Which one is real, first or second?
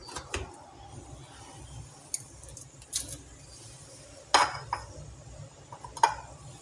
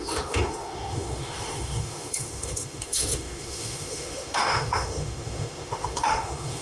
first